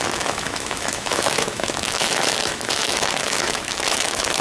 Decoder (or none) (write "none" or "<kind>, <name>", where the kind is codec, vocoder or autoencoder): autoencoder, DAC-VAE